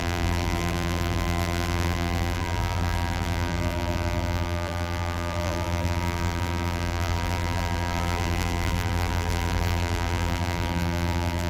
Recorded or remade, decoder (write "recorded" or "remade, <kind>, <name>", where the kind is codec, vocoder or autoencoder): remade, vocoder, BigVGAN v2